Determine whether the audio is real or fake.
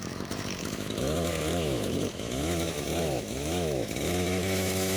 fake